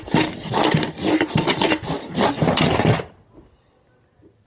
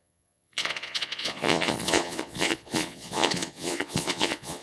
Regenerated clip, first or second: second